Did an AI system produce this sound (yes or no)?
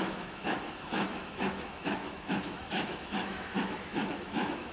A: yes